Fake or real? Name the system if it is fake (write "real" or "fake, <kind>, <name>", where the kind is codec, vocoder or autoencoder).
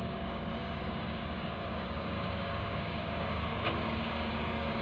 fake, codec, DAC